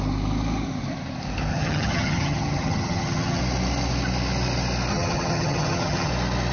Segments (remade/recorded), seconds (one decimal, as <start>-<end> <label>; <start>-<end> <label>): 0.0-1.5 recorded; 1.5-3.4 remade; 3.4-4.9 recorded; 4.9-6.1 remade; 6.1-6.5 recorded